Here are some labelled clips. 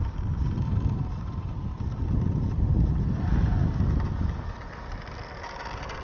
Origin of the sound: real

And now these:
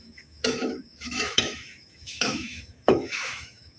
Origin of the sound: fake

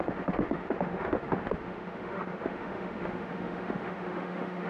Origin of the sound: fake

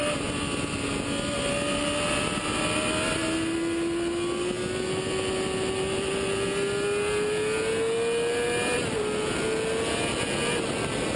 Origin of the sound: real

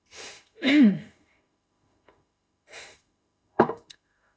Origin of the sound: fake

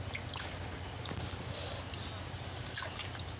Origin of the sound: real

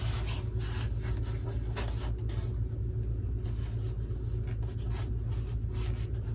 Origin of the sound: real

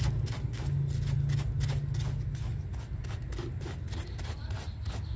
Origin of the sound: real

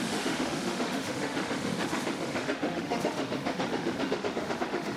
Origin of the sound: fake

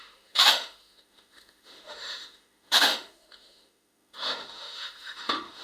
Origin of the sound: fake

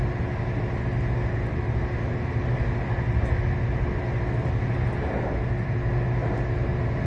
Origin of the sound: real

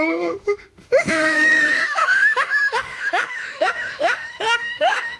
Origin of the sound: fake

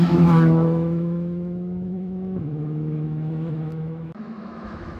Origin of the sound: fake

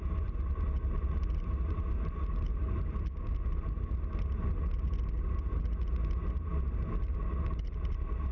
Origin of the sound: real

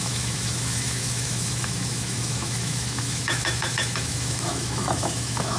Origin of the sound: fake